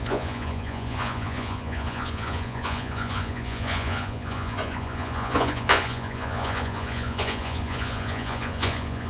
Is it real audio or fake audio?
fake